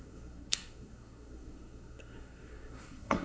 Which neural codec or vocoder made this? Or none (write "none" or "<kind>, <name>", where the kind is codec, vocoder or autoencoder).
codec, SNAC